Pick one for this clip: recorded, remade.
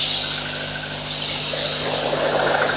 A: recorded